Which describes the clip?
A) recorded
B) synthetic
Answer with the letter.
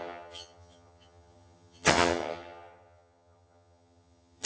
B